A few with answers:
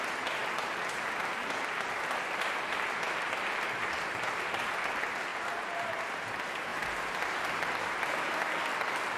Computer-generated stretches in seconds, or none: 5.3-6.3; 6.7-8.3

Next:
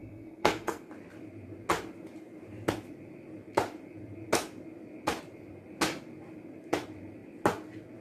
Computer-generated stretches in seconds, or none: 0.0-0.9

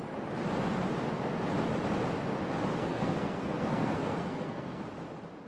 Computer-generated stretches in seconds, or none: 2.7-4.8

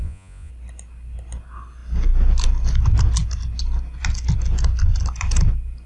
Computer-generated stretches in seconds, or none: 0.0-0.5

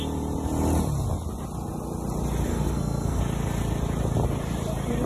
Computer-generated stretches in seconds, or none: 2.5-3.2

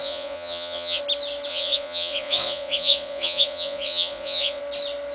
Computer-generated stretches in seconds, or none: 0.0-1.0; 1.5-4.6